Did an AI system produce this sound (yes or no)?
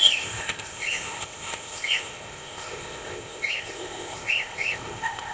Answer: yes